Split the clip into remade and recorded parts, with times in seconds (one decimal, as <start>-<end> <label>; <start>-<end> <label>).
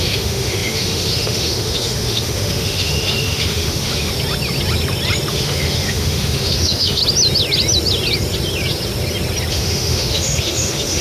0.0-4.1 remade; 4.1-5.3 recorded; 5.3-7.0 remade; 7.0-9.5 recorded; 9.5-11.0 remade